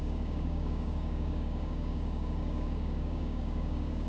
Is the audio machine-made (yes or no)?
yes